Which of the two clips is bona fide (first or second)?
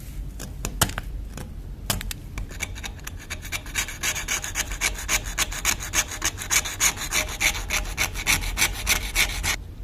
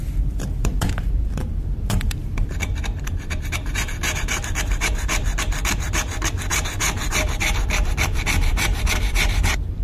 first